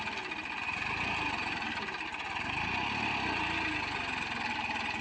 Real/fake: real